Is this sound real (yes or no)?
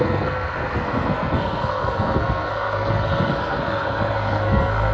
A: no